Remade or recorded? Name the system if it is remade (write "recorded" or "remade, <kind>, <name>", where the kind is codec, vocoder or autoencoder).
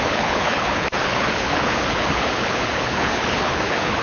remade, codec, HILCodec